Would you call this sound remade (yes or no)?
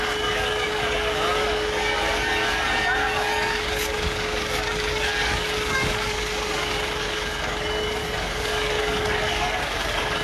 yes